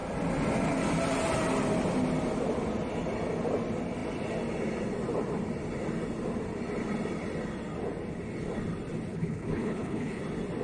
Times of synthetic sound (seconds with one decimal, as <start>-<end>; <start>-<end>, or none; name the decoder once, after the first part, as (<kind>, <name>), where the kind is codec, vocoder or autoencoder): 9.1-10.2 (codec, HILCodec)

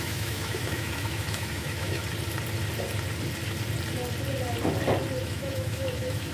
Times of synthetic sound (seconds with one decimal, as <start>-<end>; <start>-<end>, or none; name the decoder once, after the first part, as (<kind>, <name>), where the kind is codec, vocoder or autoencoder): 0.0-2.0 (autoencoder, DAC-VAE); 5.2-6.3

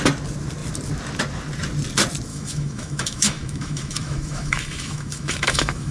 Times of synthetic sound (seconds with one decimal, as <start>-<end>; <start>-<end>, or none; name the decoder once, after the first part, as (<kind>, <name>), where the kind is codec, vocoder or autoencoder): 2.3-5.9 (autoencoder, DAC-VAE)

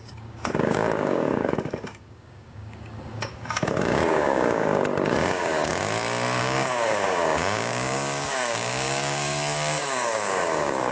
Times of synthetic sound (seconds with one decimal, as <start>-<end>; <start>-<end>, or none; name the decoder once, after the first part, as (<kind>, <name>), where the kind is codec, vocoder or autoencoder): 0.0-5.7 (codec, DAC); 6.4-10.9

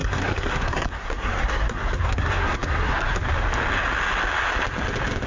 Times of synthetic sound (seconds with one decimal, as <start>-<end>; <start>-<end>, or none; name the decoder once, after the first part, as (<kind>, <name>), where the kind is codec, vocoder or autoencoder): 0.0-3.2 (codec, SNAC)

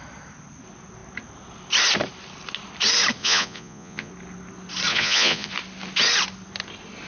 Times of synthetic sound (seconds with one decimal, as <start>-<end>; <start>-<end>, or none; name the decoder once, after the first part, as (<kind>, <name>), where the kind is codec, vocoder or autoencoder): 3.2-4.1 (vocoder, Vocos); 4.9-5.5